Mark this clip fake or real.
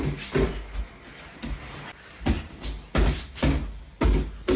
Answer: real